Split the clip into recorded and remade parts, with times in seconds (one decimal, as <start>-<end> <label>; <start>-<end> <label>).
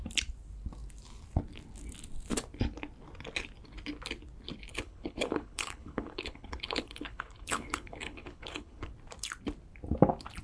0.0-4.7 recorded; 4.7-8.9 remade; 8.9-10.4 recorded